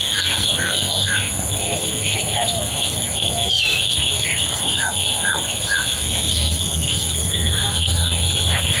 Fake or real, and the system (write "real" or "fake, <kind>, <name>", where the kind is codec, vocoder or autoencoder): fake, codec, SNAC